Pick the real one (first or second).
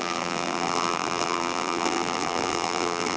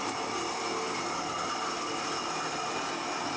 second